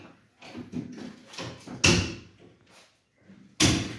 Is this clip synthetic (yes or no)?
no